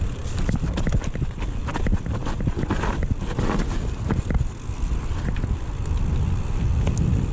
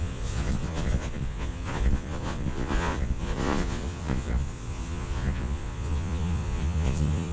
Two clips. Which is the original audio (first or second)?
first